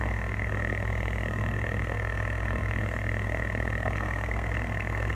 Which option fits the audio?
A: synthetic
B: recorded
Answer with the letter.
A